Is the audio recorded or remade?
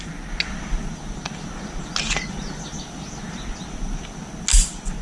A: recorded